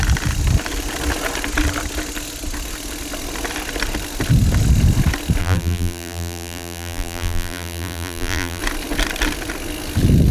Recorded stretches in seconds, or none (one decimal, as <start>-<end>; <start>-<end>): 0.0-5.4; 8.6-10.3